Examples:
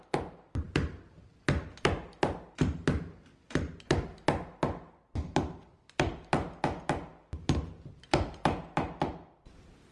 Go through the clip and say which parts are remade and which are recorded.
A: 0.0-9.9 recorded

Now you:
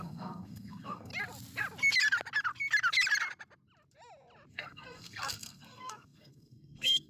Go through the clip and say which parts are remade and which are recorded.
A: 0.0-1.1 remade; 1.1-4.5 recorded; 4.5-7.1 remade

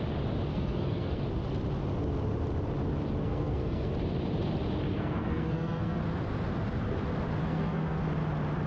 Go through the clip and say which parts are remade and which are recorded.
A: 0.0-0.5 recorded; 0.5-1.2 remade; 1.2-3.2 recorded; 3.2-3.9 remade; 3.9-4.9 recorded; 4.9-6.0 remade; 6.0-7.4 recorded; 7.4-8.0 remade; 8.0-8.7 recorded